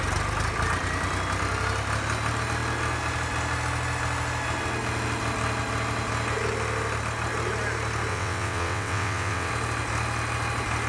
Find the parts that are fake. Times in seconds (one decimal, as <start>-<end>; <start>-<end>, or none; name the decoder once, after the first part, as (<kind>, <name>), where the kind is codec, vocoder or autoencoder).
8.1-9.5 (vocoder, WaveNeXt)